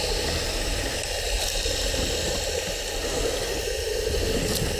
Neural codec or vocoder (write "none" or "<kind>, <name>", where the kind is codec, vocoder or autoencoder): none